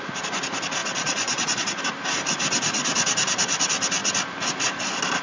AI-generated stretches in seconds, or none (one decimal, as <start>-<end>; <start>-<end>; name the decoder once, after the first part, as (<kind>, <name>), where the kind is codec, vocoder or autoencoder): 0.8-1.8 (vocoder, Vocos)